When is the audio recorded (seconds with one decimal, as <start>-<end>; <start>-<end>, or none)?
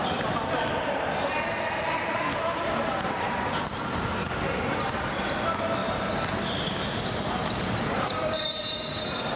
0.0-7.4; 8.6-9.4